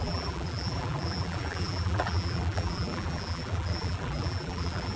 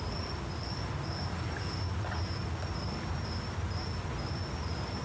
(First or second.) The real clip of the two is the second